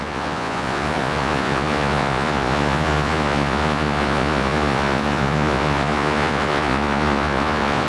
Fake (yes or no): yes